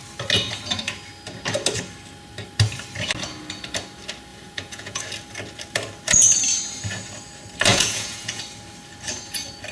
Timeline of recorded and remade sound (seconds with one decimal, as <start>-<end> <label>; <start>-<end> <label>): 0.0-4.3 recorded; 4.3-5.0 remade; 5.0-7.7 recorded; 7.7-8.4 remade; 8.4-9.7 recorded